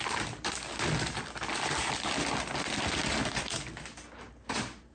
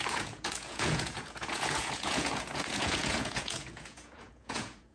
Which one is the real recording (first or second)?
first